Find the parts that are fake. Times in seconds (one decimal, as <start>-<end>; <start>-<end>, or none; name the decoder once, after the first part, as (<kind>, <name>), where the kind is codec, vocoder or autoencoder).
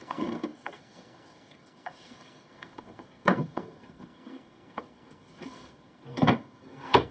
0.0-7.1 (codec, SNAC)